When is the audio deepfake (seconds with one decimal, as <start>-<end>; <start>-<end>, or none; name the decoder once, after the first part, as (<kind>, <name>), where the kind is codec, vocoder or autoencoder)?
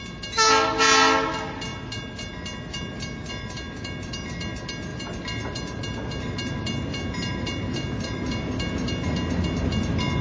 none